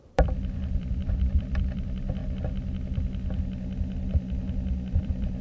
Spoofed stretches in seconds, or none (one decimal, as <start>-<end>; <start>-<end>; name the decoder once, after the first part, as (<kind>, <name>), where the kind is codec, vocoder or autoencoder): 0.0-2.2 (vocoder, BigVGAN v2); 5.0-5.4